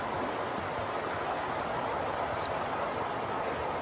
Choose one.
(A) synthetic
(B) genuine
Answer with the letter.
B